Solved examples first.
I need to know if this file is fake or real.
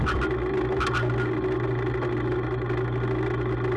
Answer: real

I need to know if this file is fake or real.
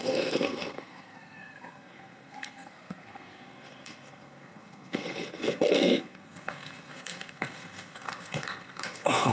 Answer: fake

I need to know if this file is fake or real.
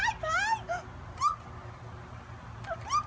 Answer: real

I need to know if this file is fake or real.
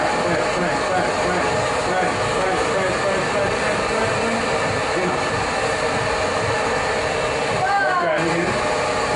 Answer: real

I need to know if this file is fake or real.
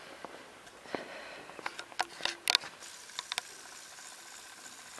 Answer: real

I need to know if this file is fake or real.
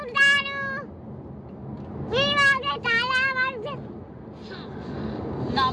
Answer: real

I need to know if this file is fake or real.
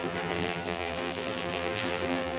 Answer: fake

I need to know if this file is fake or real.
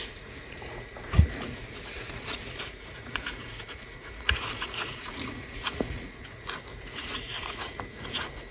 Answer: fake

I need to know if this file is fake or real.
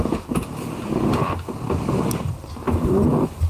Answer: real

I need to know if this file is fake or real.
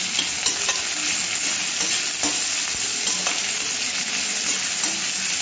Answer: real